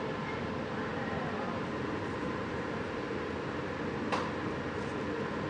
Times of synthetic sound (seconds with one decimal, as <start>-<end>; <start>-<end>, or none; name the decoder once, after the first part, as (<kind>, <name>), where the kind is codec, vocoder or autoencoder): 0.9-3.7 (vocoder, BigVGAN v2)